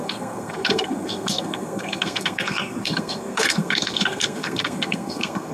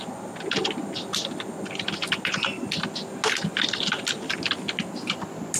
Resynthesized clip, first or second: first